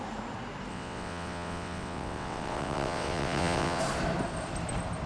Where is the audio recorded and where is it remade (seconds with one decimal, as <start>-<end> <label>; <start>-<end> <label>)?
0.0-0.7 recorded; 0.7-3.8 remade; 3.8-5.1 recorded